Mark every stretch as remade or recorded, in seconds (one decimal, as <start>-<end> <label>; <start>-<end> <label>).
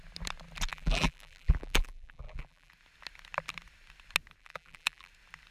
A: 0.0-0.7 recorded; 0.7-2.7 remade; 2.7-4.4 recorded; 4.4-5.1 remade; 5.1-5.5 recorded